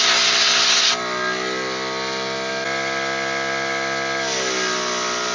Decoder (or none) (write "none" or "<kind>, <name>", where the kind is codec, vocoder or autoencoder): none